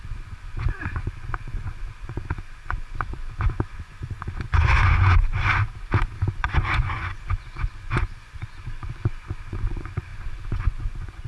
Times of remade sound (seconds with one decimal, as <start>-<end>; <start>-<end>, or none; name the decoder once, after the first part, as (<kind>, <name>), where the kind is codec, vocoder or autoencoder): 0.0-5.5 (vocoder, Vocos); 6.4-11.3

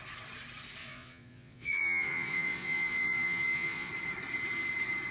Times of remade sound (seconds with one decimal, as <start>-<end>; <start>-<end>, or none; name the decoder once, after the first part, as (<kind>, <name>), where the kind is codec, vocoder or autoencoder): 0.8-3.9 (vocoder, Vocos)

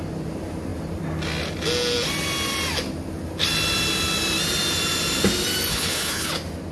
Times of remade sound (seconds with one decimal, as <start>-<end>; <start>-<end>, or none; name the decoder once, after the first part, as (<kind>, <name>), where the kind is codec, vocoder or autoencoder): 5.7-6.3 (codec, HILCodec)

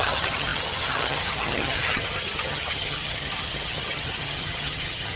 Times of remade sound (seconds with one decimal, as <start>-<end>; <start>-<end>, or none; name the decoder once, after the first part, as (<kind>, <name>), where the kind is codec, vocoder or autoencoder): 0.0-5.2 (vocoder, HiFi-GAN)

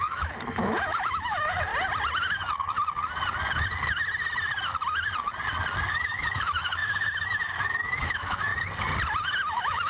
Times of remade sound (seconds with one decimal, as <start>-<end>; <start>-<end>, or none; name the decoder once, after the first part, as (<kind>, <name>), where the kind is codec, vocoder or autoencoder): 0.0-1.7 (autoencoder, DAC-VAE); 5.9-8.5; 9.5-9.9

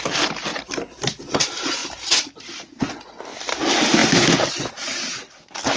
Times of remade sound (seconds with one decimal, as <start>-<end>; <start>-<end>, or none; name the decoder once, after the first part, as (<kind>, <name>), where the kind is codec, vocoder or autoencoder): 0.5-1.2 (vocoder, BigVGAN v2); 1.8-2.8

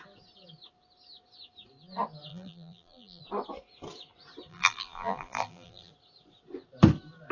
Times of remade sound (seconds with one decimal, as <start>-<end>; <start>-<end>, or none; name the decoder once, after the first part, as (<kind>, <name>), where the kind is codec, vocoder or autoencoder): 2.3-3.2 (vocoder, BigVGAN v2); 4.5-5.9